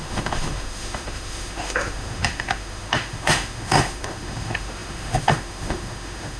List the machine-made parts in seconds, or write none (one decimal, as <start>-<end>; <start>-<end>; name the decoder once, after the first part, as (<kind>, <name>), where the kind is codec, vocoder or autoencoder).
0.0-6.4 (autoencoder, DAC-VAE)